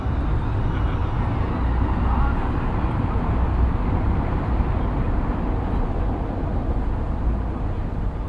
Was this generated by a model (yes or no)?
no